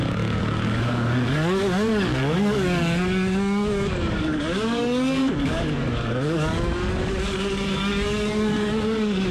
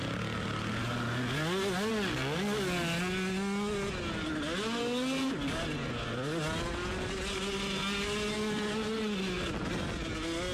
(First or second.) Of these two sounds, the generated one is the first